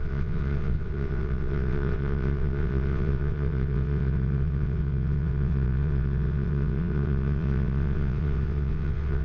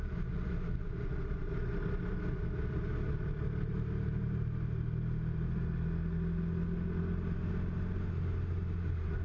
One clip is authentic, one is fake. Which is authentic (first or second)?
second